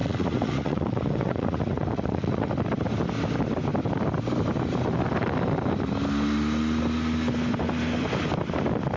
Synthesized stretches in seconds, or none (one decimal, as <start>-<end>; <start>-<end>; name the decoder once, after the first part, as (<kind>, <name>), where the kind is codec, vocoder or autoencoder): 0.0-2.5 (vocoder, Vocos)